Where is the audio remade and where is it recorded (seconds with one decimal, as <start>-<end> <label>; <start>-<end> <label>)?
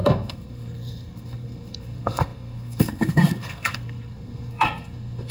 0.0-5.3 remade